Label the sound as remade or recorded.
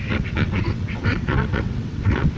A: remade